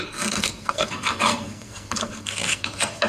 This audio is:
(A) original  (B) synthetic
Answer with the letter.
B